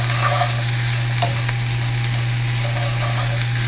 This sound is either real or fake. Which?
real